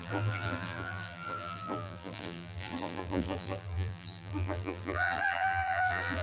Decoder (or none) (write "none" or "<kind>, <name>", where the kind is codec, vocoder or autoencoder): vocoder, BigVGAN v2